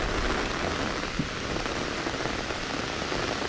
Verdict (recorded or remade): recorded